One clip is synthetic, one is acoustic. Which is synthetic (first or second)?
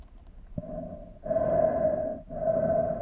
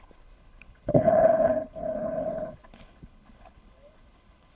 second